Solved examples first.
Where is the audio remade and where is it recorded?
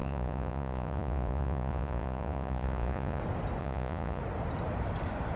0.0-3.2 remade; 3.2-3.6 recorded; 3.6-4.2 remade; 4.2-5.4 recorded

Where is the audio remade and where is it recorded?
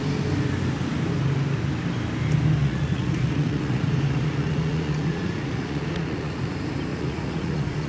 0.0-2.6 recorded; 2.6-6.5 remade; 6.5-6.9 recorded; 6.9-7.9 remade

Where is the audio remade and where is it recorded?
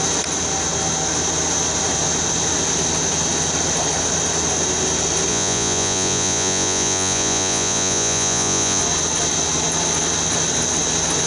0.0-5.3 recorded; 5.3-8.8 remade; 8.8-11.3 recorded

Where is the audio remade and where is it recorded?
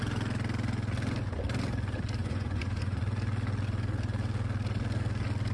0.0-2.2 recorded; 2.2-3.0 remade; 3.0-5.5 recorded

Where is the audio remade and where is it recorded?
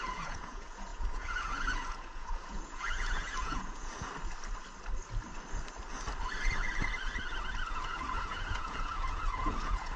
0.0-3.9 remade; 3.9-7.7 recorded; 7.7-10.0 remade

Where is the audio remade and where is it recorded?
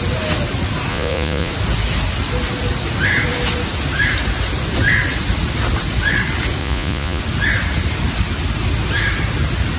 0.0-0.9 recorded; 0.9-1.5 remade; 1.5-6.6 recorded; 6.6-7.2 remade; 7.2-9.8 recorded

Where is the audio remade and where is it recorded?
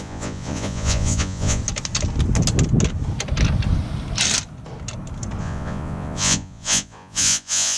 0.0-1.6 remade; 1.6-5.4 recorded; 5.4-7.8 remade